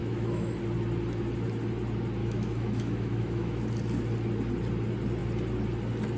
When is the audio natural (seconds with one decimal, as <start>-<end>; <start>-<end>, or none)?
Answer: 0.6-2.2; 3.6-6.2